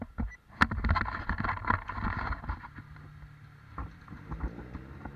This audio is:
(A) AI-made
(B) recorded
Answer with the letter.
B